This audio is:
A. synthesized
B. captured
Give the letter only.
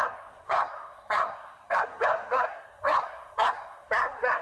A